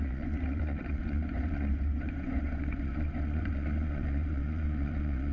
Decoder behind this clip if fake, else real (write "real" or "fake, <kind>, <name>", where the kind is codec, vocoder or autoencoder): fake, vocoder, Vocos